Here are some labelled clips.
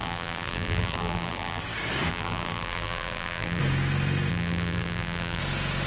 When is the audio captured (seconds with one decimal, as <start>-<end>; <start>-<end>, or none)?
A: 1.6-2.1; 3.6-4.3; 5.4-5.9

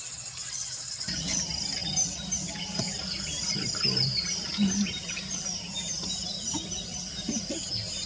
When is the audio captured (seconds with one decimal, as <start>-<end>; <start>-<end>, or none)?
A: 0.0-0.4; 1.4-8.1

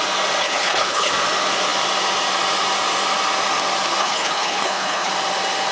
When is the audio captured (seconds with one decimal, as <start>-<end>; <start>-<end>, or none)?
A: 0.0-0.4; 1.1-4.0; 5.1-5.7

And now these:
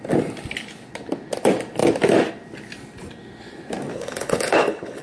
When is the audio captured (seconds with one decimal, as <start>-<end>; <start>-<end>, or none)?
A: 0.0-3.9